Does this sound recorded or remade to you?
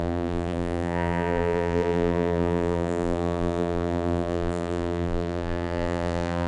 remade